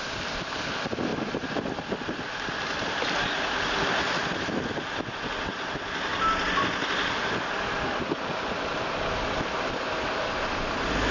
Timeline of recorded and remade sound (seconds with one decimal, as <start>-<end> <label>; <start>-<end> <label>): 0.0-11.1 recorded